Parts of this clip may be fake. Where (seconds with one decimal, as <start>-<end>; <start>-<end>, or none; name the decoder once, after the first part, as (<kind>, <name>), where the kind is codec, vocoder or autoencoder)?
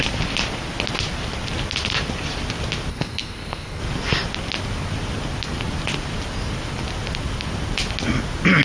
2.9-3.8 (codec, SNAC)